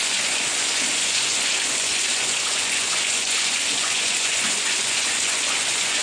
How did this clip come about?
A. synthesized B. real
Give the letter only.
A